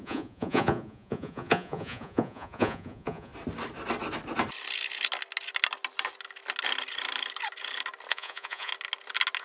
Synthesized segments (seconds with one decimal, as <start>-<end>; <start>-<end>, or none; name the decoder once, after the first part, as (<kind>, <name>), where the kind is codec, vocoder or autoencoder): 0.0-3.3 (vocoder, Vocos); 8.1-8.7